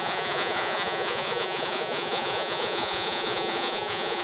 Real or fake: fake